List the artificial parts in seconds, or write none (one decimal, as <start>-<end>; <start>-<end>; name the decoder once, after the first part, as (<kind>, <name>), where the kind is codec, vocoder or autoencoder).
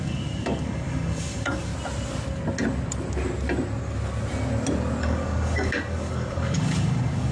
0.0-1.7 (codec, DAC); 5.0-7.3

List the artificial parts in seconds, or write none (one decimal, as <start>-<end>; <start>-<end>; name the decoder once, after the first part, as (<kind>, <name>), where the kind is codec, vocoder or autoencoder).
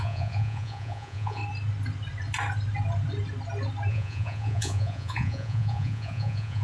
0.0-1.4 (vocoder, Vocos); 3.9-6.6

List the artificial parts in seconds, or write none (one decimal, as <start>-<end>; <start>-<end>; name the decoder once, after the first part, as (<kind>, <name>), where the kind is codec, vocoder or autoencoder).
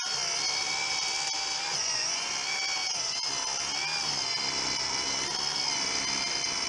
1.7-2.3 (vocoder, Vocos); 2.8-3.3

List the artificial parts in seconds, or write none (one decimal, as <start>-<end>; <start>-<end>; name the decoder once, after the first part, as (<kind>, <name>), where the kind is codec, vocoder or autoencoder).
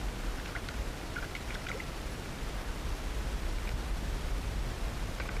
none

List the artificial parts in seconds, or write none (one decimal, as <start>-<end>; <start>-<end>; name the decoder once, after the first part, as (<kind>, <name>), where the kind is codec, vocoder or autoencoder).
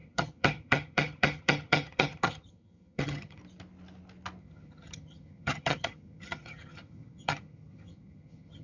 0.0-3.4 (vocoder, HiFi-GAN); 4.4-8.6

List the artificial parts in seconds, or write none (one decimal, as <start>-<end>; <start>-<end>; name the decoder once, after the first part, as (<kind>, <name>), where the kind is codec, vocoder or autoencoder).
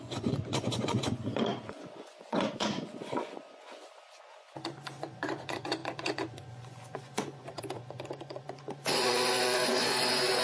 0.0-10.4 (vocoder, Vocos)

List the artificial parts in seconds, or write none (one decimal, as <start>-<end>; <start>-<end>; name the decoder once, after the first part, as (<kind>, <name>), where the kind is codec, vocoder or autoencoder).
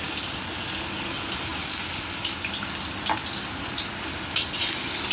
none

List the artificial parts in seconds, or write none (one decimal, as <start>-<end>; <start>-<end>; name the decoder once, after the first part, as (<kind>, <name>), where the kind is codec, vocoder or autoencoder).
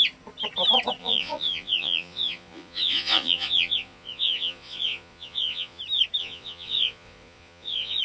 1.0-5.8 (vocoder, Vocos); 6.2-8.0